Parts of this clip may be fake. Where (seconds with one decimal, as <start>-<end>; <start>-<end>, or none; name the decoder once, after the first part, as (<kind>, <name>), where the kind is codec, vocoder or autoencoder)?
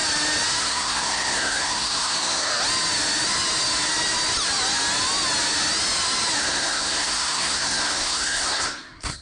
0.6-2.5 (codec, SNAC); 6.4-9.2